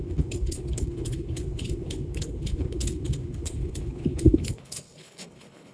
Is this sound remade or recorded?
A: remade